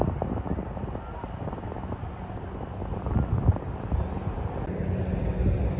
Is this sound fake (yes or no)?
no